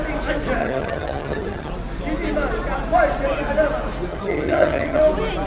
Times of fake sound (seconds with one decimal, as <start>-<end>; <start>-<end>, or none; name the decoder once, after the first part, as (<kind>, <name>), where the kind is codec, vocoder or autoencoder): 0.6-1.7 (vocoder, HiFi-GAN); 4.1-5.0